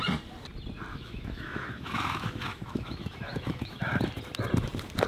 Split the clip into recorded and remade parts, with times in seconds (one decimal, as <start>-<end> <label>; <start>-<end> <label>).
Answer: 0.0-0.9 recorded; 0.9-4.0 remade; 4.0-5.1 recorded